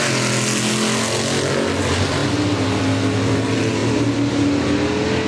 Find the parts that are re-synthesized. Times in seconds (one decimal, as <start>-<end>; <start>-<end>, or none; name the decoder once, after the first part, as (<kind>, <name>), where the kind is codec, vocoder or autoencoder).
none